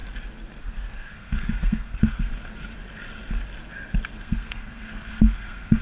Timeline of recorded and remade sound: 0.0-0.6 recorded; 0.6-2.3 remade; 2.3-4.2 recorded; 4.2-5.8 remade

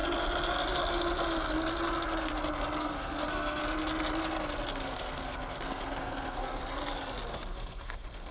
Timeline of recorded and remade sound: 0.0-2.8 recorded; 2.8-3.6 remade; 3.6-4.7 recorded; 4.7-6.6 remade; 6.6-7.3 recorded; 7.3-8.3 remade

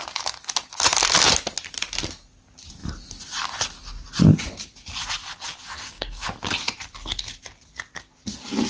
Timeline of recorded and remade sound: 0.0-5.7 recorded; 5.7-6.3 remade; 6.3-8.7 recorded